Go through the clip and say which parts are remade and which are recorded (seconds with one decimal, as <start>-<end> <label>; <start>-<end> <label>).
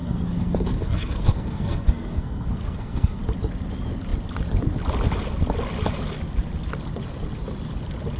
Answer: 0.0-3.2 remade; 3.2-8.2 recorded